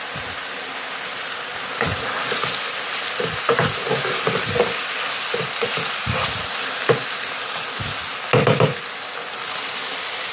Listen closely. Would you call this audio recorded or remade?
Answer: recorded